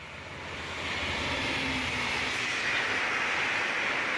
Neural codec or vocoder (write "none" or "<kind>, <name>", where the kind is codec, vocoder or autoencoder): none